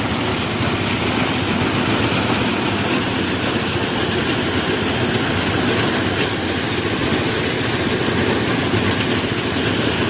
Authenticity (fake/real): real